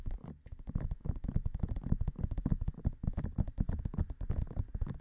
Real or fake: real